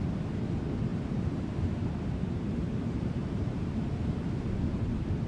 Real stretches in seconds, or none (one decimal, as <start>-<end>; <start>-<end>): 0.0-0.9; 4.1-5.3